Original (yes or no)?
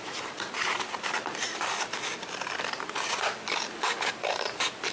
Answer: yes